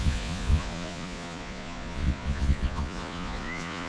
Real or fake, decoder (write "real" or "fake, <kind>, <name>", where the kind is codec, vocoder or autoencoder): fake, vocoder, Vocos